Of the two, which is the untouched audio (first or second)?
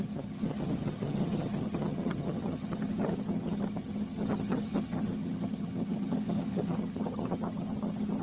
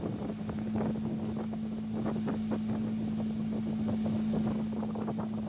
second